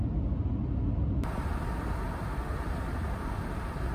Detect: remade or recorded recorded